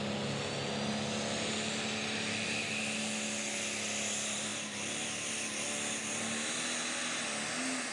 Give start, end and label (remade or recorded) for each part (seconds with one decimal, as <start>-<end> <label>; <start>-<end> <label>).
0.0-7.9 recorded